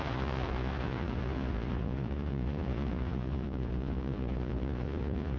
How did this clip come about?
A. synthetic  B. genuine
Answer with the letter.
A